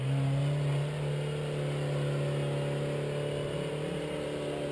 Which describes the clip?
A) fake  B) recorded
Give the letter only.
B